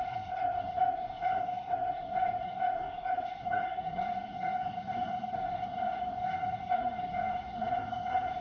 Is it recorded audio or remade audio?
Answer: remade